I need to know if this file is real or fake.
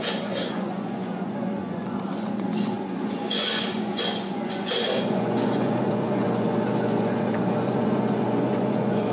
fake